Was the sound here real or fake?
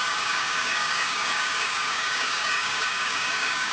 fake